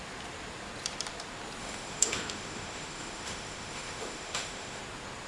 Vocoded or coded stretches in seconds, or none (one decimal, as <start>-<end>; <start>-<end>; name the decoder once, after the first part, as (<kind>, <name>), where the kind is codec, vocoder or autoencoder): 1.6-4.8 (autoencoder, DAC-VAE)